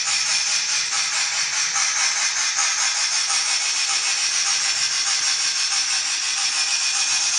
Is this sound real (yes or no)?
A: yes